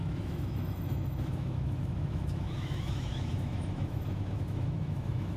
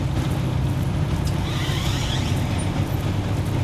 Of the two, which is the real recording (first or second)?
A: second